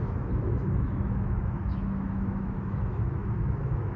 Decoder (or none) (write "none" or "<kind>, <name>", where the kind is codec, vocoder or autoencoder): autoencoder, DAC-VAE